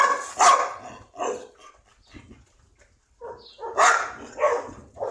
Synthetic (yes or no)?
no